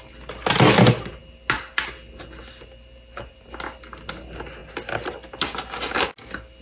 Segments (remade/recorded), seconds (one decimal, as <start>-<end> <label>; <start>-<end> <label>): 0.0-6.6 recorded